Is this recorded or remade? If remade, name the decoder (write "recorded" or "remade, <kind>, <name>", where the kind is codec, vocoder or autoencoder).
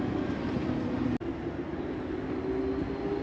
recorded